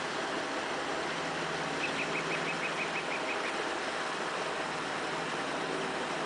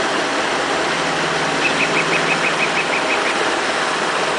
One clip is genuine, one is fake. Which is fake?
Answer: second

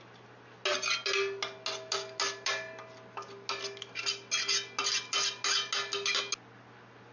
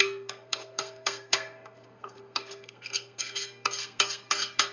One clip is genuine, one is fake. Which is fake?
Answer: second